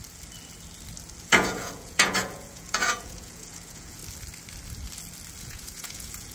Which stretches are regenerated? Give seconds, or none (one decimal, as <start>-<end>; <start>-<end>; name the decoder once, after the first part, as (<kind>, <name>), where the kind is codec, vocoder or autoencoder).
1.2-4.0 (vocoder, Vocos); 5.4-6.3